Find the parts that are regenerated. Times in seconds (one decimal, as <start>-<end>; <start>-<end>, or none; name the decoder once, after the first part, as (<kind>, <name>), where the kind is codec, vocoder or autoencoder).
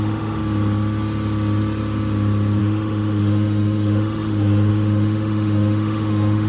0.0-0.4 (autoencoder, DAC-VAE); 2.6-6.5